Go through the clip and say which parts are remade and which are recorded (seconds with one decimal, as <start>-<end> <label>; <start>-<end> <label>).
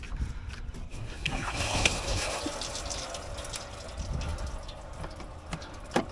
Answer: 0.0-0.9 recorded; 0.9-2.4 remade; 2.4-6.1 recorded